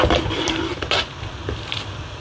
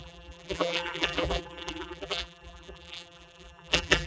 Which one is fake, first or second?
second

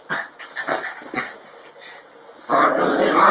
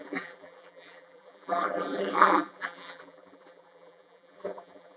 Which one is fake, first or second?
second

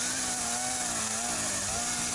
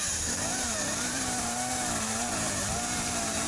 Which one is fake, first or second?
second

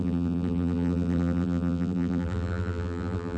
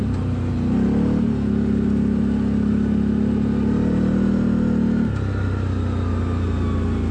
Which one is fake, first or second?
first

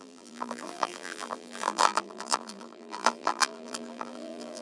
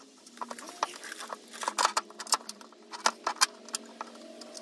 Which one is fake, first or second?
first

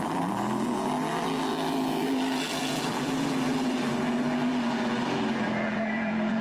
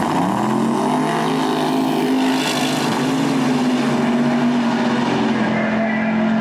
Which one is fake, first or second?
first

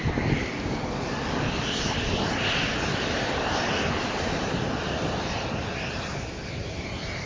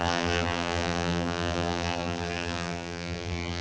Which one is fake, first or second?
second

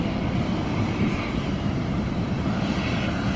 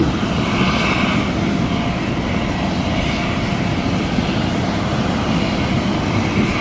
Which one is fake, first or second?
first